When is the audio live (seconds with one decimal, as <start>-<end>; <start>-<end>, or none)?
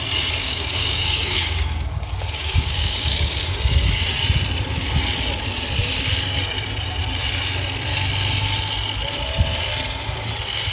0.0-0.4; 3.4-10.7